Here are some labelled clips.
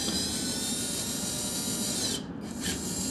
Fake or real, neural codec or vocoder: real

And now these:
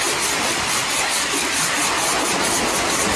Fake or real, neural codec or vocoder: real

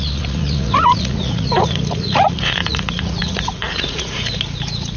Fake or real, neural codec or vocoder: fake, vocoder, Vocos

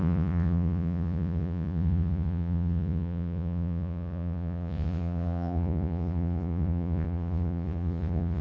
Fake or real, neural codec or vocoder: fake, vocoder, Vocos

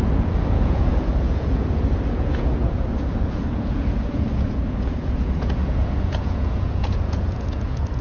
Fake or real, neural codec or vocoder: fake, vocoder, Vocos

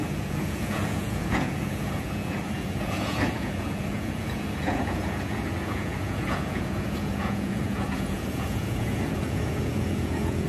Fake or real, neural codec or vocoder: fake, vocoder, Vocos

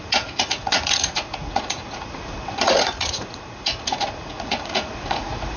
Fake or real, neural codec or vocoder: fake, vocoder, Vocos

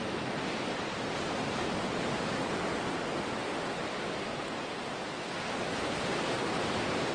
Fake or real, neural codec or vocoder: real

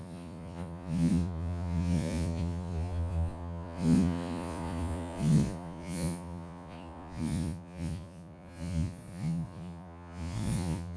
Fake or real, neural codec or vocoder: fake, vocoder, Vocos